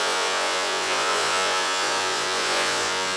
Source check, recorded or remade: remade